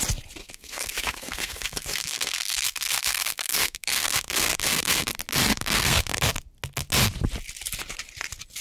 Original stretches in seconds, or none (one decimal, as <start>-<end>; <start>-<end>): 0.0-0.4; 5.1-5.5; 6.2-8.6